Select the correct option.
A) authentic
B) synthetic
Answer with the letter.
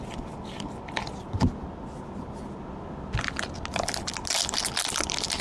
A